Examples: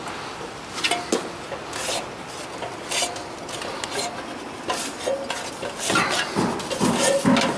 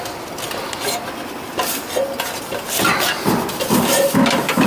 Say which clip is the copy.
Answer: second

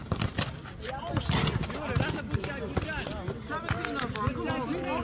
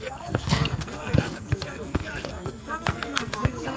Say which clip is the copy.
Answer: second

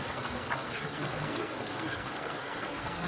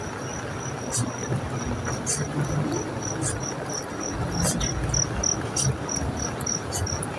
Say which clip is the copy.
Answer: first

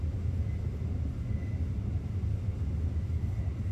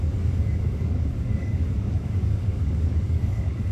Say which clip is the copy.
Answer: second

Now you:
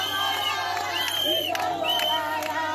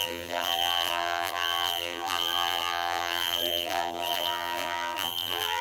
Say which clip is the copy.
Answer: second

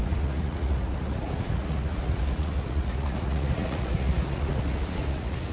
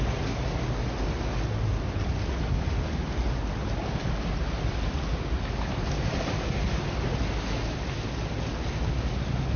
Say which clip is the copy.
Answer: first